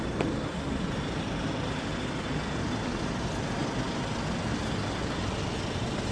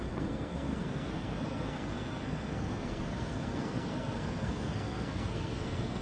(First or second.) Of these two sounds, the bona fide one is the first